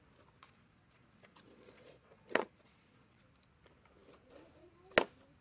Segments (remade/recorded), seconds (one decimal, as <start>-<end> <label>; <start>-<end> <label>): 0.0-0.4 recorded; 0.4-3.2 remade; 3.2-5.4 recorded